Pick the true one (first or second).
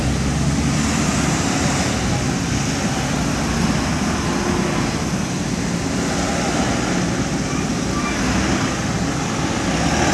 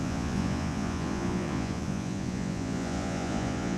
first